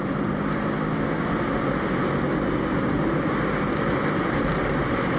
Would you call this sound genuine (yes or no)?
yes